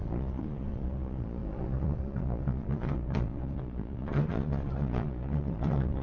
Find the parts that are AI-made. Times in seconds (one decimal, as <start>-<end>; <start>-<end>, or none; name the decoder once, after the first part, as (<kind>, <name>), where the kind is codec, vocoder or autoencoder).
0.0-6.0 (vocoder, Vocos)